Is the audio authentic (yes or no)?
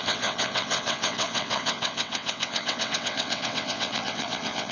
no